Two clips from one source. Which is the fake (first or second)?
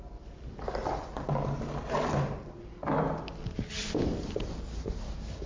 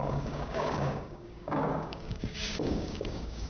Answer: second